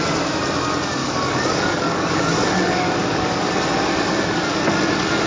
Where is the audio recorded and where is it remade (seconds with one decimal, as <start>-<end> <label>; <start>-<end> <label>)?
0.0-1.0 recorded; 1.0-3.7 remade; 3.7-5.3 recorded

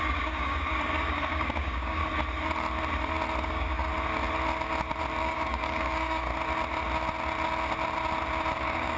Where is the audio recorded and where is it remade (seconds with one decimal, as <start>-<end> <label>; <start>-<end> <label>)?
0.0-2.0 remade; 2.0-3.4 recorded; 3.4-3.9 remade; 3.9-5.2 recorded; 5.2-6.3 remade; 6.3-8.6 recorded; 8.6-9.0 remade

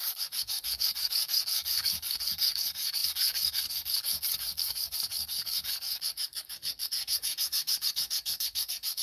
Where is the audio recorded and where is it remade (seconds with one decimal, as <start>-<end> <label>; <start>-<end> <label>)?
0.0-9.0 remade

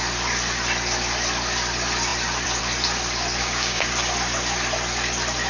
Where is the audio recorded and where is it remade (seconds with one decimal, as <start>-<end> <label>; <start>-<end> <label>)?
0.0-3.4 recorded; 3.4-3.9 remade; 3.9-5.5 recorded

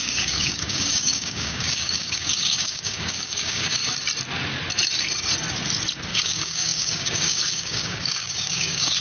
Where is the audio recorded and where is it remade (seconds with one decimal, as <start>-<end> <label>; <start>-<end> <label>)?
0.0-3.8 remade; 3.8-6.1 recorded; 6.1-9.0 remade

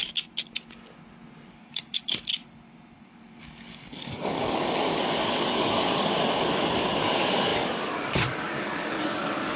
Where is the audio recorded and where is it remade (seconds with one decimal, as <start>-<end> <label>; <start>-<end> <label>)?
0.0-1.5 recorded; 1.5-2.3 remade; 2.3-3.0 recorded; 3.0-9.6 remade

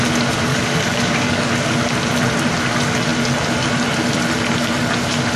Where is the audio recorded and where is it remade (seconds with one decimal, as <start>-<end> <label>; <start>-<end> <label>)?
0.0-0.5 recorded; 0.5-1.5 remade; 1.5-5.4 recorded